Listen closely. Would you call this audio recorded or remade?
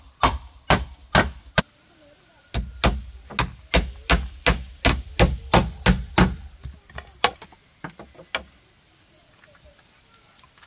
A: recorded